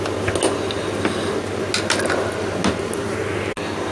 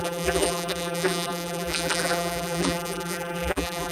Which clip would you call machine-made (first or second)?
second